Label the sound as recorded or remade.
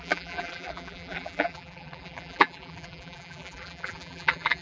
remade